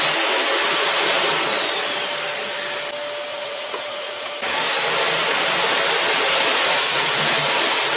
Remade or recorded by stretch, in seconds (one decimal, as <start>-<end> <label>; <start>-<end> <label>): 0.0-3.3 recorded; 3.3-4.3 remade; 4.3-6.5 recorded; 6.5-7.1 remade; 7.1-8.0 recorded